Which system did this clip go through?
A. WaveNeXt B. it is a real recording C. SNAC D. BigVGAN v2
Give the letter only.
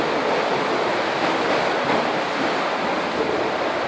B